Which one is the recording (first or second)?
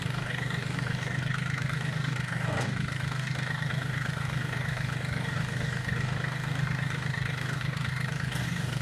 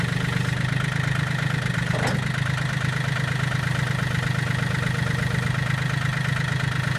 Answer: second